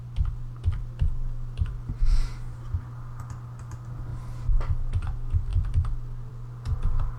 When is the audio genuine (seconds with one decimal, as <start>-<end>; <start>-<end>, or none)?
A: 0.0-7.2